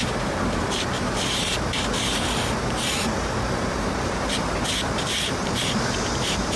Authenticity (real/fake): fake